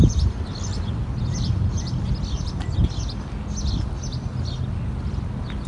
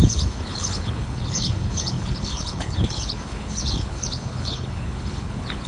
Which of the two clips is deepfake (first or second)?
second